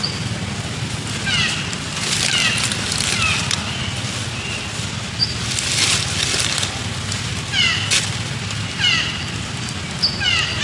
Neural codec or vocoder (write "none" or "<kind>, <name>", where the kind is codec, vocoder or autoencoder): none